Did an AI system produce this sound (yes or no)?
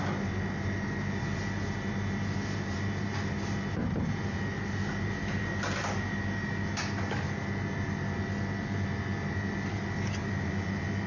no